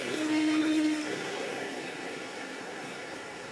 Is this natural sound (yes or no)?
no